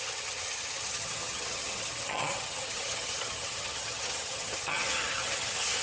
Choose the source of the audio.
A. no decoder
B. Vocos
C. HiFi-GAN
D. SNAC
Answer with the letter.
C